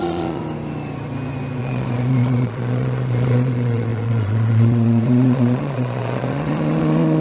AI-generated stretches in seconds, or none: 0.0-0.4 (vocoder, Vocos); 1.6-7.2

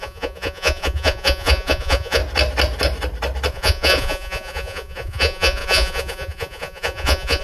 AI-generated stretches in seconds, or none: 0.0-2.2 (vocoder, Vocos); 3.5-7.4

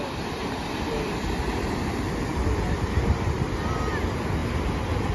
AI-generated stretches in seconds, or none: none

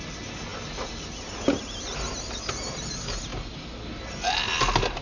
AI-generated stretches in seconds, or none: none

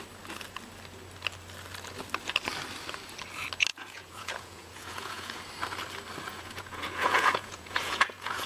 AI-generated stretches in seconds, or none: 3.7-5.5 (vocoder, Vocos); 6.3-8.5